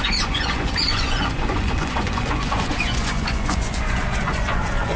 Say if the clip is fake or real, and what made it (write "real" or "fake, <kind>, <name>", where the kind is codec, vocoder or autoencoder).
fake, vocoder, Vocos